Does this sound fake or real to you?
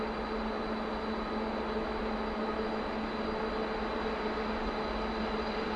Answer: real